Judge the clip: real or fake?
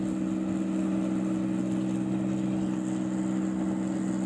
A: real